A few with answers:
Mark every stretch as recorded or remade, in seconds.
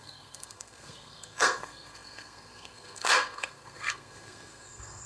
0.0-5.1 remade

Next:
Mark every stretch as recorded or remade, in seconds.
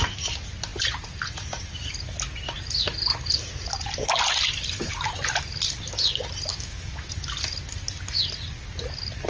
0.0-6.5 recorded; 6.5-7.1 remade; 7.1-9.3 recorded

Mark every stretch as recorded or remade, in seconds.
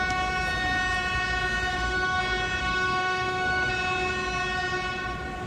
0.0-1.7 recorded; 1.7-2.2 remade; 2.2-2.6 recorded; 2.6-3.7 remade; 3.7-5.5 recorded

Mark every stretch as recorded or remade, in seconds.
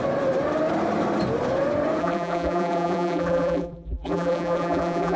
0.0-2.0 recorded; 2.0-5.2 remade